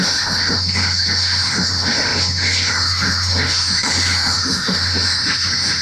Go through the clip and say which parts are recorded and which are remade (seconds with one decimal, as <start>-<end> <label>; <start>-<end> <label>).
0.0-5.8 remade